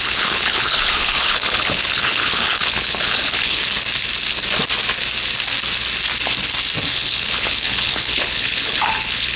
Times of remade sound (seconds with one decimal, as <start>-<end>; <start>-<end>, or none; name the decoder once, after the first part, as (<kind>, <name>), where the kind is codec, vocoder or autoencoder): 0.0-3.7 (codec, HILCodec); 6.9-9.4